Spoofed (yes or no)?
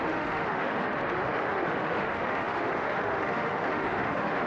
yes